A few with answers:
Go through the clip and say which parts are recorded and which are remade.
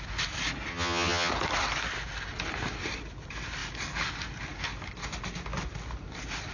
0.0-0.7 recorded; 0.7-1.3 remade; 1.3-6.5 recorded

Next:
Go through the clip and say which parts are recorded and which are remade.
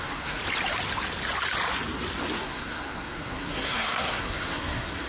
0.0-0.4 remade; 0.4-2.4 recorded; 2.4-5.1 remade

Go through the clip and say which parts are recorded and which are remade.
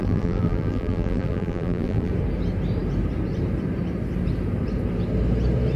0.0-2.1 remade; 2.1-5.8 recorded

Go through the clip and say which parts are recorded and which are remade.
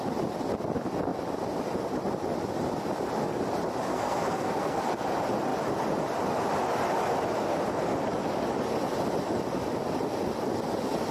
0.0-3.9 recorded; 3.9-4.8 remade; 4.8-11.1 recorded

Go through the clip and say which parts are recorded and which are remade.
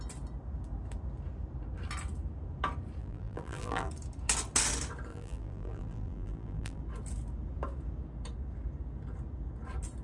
0.0-3.0 recorded; 3.0-3.9 remade; 3.9-5.1 recorded; 5.1-6.8 remade; 6.8-10.0 recorded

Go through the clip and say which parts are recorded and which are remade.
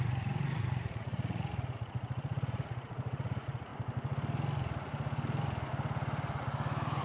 0.0-3.7 remade; 3.7-7.0 recorded